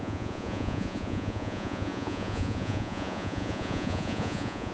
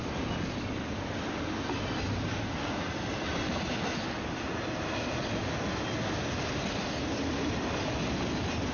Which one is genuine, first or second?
second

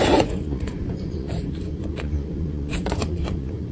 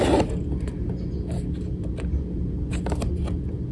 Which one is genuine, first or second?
second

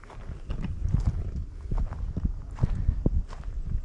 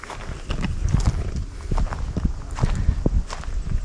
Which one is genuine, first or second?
second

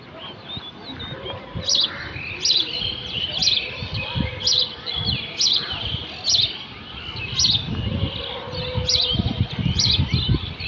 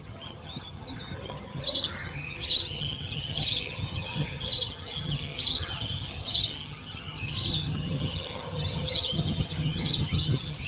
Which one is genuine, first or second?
first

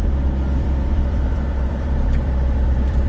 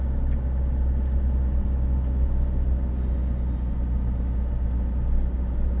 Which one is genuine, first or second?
second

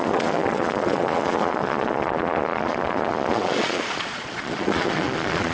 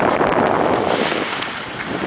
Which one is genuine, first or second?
second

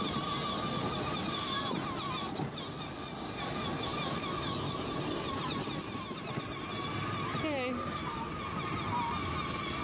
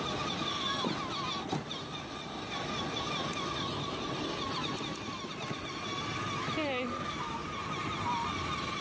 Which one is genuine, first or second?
first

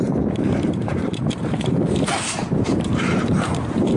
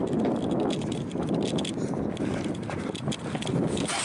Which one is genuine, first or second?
second